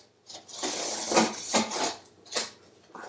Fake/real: real